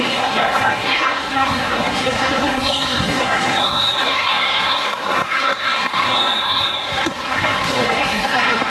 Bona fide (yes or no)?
no